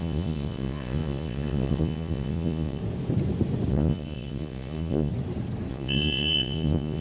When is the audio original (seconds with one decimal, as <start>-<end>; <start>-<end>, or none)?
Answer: 2.8-3.7; 5.1-5.7